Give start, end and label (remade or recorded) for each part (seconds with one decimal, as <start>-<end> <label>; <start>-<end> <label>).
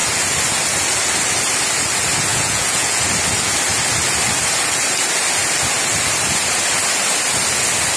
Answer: 0.0-2.3 recorded; 2.3-3.0 remade; 3.0-8.0 recorded